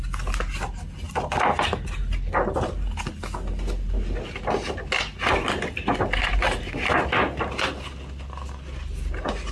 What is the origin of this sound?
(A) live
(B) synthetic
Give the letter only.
A